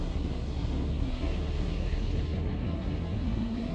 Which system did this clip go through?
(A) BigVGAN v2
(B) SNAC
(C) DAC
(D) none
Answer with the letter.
B